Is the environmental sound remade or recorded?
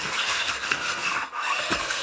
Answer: remade